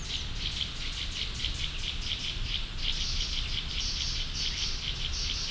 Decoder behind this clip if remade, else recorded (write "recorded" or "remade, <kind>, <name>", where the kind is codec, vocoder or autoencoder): recorded